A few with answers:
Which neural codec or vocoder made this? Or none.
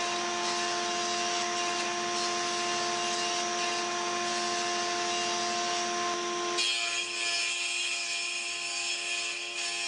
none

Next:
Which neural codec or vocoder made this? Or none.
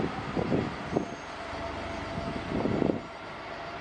none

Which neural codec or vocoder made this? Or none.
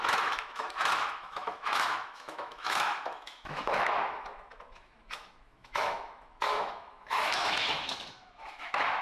autoencoder, DAC-VAE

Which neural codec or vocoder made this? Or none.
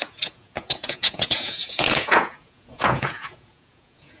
vocoder, Vocos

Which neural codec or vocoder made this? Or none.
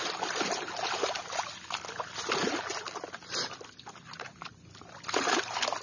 none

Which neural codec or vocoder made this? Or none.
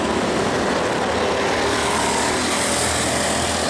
none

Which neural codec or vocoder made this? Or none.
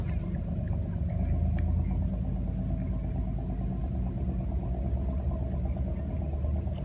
none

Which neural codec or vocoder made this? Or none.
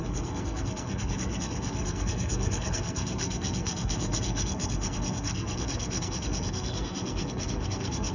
codec, SNAC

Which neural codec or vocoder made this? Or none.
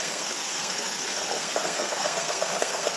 codec, SNAC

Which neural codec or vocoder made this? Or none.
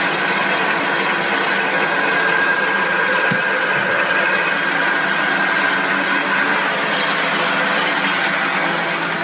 none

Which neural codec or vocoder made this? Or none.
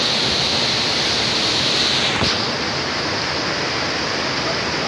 none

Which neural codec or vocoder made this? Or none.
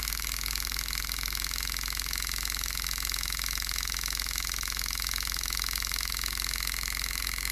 autoencoder, DAC-VAE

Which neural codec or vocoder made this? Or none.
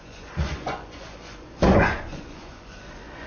vocoder, Vocos